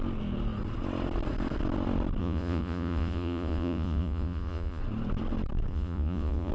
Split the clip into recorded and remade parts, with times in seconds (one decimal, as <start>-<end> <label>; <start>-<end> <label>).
0.0-2.2 recorded; 2.2-4.8 remade; 4.8-5.7 recorded; 5.7-6.5 remade

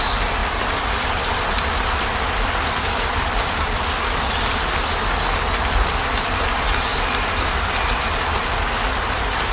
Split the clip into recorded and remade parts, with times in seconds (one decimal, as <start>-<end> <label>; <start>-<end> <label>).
0.0-0.4 recorded; 0.4-4.5 remade; 4.5-6.9 recorded; 6.9-8.7 remade; 8.7-9.5 recorded

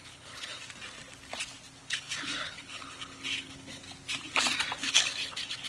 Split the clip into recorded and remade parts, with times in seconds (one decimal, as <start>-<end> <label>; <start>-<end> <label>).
0.0-0.6 remade; 0.6-1.8 recorded; 1.8-3.8 remade; 3.8-4.8 recorded; 4.8-5.7 remade

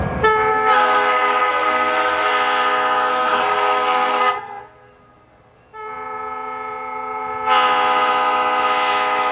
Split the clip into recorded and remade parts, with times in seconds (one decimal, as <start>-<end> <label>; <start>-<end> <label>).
0.0-0.5 recorded; 0.5-2.3 remade; 2.3-3.1 recorded; 3.1-4.6 remade; 4.6-9.3 recorded

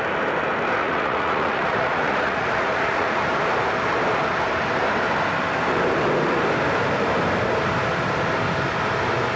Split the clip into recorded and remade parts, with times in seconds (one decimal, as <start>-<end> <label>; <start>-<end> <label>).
0.0-0.8 recorded; 0.8-3.2 remade; 3.2-9.4 recorded

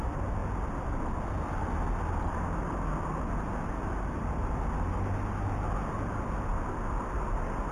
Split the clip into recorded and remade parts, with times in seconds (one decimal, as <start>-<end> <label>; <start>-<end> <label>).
0.0-7.7 recorded

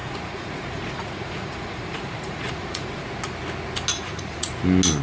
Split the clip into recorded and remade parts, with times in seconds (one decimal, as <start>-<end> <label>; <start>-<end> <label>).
0.0-3.0 remade; 3.0-3.9 recorded; 3.9-4.5 remade; 4.5-5.0 recorded